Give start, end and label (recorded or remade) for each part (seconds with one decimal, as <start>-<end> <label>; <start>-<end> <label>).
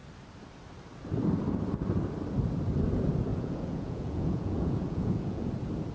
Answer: 0.0-3.3 recorded; 3.3-5.5 remade; 5.5-5.9 recorded